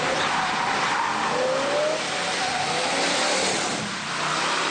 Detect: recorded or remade recorded